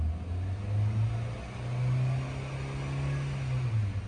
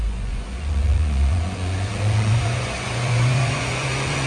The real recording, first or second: first